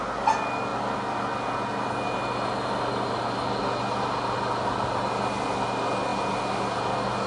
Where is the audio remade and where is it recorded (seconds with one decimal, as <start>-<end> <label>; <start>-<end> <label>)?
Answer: 0.0-7.3 recorded